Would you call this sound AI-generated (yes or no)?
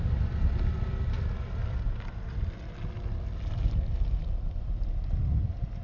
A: no